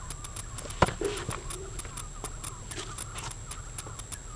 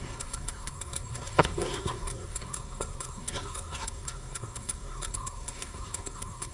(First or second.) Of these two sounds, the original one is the first